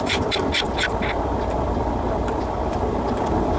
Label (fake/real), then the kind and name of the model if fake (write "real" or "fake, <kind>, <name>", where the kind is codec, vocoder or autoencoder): fake, vocoder, BigVGAN v2